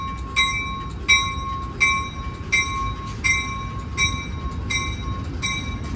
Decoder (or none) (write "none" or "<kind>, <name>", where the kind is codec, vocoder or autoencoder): none